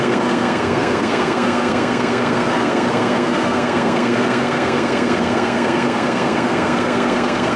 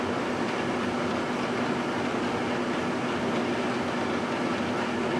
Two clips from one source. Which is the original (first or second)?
second